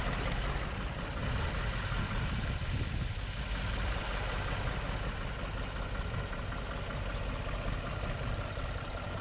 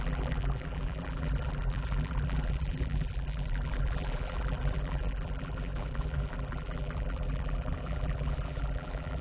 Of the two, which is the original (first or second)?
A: first